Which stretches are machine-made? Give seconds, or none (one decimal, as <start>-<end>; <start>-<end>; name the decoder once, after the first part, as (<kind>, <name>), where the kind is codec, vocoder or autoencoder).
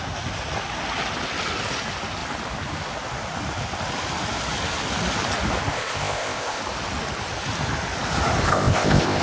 5.7-6.6 (codec, ZipCodec); 8.5-9.2